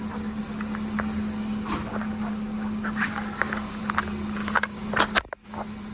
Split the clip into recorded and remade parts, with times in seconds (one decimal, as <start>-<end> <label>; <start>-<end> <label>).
0.0-1.9 recorded; 1.9-3.8 remade; 3.8-4.4 recorded; 4.4-4.9 remade; 4.9-5.9 recorded